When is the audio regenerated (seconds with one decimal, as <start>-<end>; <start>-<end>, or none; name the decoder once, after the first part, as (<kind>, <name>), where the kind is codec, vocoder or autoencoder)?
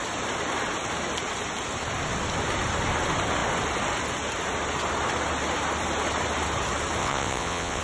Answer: 7.0-7.8 (vocoder, WaveNeXt)